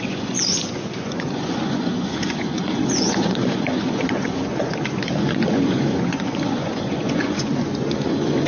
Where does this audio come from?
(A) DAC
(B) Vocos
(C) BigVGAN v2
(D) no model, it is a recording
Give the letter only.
B